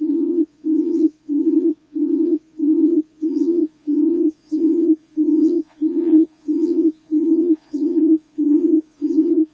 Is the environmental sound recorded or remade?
remade